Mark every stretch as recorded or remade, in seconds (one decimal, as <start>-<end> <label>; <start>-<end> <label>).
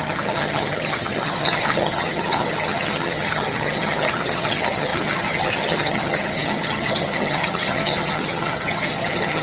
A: 0.0-9.4 remade